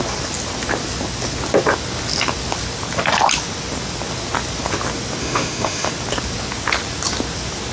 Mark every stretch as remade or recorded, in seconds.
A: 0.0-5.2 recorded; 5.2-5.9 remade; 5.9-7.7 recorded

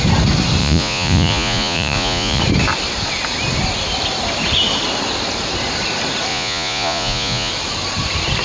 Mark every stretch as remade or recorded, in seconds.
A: 0.0-0.6 recorded; 0.6-2.4 remade; 2.4-6.3 recorded; 6.3-7.5 remade; 7.5-8.4 recorded

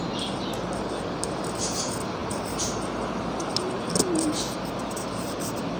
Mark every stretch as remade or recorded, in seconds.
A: 0.0-5.8 recorded